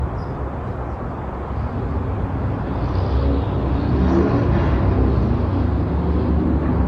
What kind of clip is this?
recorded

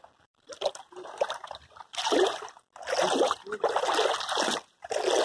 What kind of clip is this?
recorded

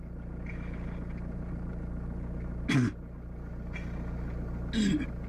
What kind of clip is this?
recorded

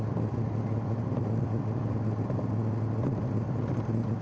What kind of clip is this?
recorded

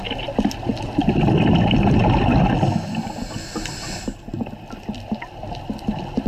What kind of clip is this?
recorded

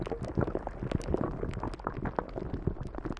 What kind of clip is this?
recorded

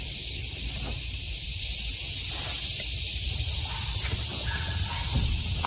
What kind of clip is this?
remade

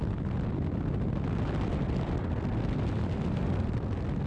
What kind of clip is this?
recorded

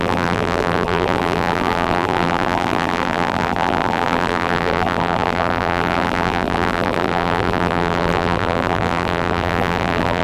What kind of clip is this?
remade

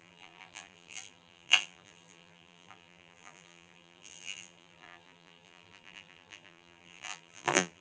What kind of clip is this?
remade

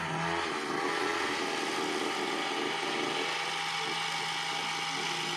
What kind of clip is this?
recorded